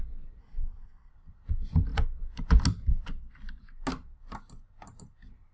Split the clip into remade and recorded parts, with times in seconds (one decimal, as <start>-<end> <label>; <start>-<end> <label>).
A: 0.0-0.4 recorded; 0.4-1.1 remade; 1.1-5.5 recorded